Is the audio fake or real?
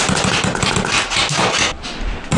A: real